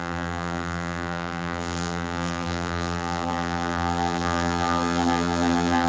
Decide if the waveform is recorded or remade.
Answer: remade